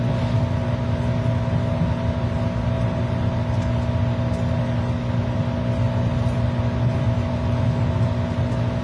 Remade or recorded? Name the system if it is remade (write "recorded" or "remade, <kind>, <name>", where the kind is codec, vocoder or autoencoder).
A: recorded